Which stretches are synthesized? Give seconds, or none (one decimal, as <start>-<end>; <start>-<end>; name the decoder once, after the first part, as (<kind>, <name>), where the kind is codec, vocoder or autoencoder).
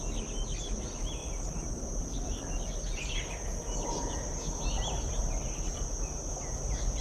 none